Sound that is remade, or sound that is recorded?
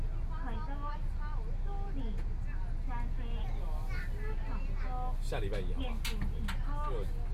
recorded